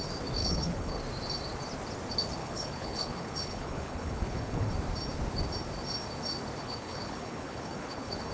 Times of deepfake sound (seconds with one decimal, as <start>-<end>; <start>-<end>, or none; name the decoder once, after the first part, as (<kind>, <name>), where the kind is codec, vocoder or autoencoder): 0.4-1.0 (codec, HILCodec); 2.4-4.7; 6.6-8.3

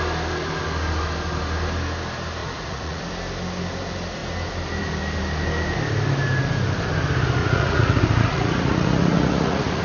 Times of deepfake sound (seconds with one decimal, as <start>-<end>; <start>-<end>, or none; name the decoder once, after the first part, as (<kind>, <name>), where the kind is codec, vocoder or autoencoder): 2.4-3.0 (vocoder, Vocos); 7.4-9.8

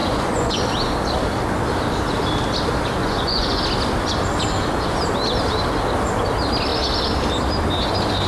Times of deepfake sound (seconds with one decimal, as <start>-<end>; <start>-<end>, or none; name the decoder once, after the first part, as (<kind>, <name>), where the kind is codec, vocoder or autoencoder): 0.0-0.6 (vocoder, Vocos); 3.0-3.6